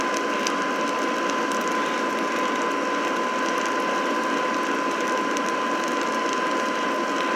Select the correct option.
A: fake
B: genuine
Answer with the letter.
B